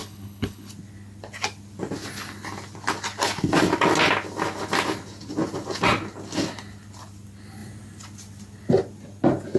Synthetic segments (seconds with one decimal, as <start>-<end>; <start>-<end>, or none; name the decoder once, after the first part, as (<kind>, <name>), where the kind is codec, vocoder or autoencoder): 0.0-0.7 (codec, HILCodec)